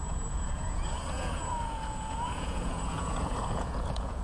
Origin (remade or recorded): remade